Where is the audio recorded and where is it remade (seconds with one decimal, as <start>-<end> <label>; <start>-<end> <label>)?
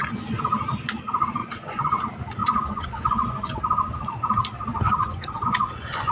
0.0-1.4 recorded; 1.4-2.0 remade; 2.0-2.4 recorded; 2.4-3.6 remade; 3.6-4.7 recorded; 4.7-6.1 remade